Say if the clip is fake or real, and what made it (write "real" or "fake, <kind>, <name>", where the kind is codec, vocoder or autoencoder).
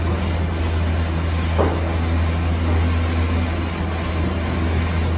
real